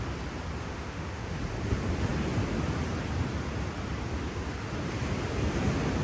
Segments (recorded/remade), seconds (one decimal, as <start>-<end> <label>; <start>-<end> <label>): 0.0-0.6 recorded; 0.6-1.4 remade; 1.4-6.0 recorded